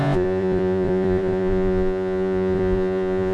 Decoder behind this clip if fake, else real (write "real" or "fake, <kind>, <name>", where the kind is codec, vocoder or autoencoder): fake, vocoder, Vocos